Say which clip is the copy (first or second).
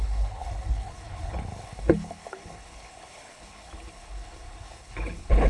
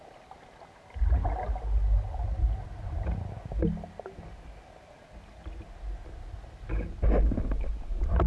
first